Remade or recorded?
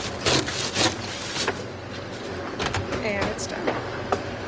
recorded